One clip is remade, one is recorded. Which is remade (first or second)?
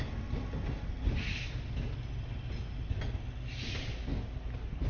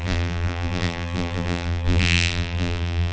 second